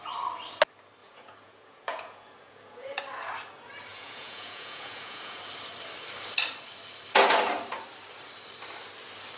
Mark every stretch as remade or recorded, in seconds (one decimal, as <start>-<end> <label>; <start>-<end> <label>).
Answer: 0.0-1.0 recorded; 1.0-3.0 remade; 3.0-3.9 recorded; 3.9-5.4 remade; 5.4-9.4 recorded